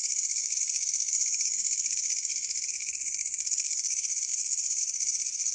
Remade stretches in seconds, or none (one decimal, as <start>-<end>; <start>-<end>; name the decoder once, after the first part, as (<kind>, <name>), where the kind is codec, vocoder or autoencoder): 0.0-5.5 (codec, SNAC)